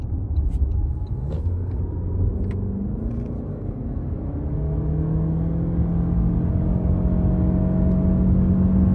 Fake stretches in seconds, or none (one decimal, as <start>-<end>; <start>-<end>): 1.2-1.8; 3.5-4.0